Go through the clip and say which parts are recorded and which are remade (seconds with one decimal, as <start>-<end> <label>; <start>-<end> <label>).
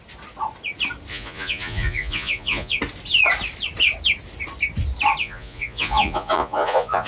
0.0-1.1 recorded; 1.1-2.8 remade; 2.8-5.2 recorded; 5.2-7.1 remade